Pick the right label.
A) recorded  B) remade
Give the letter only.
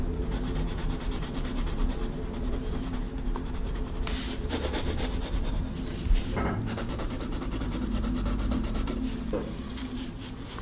B